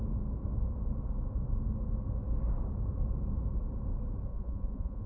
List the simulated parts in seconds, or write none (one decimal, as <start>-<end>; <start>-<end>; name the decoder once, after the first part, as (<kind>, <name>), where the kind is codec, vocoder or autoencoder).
4.3-5.1 (vocoder, Vocos)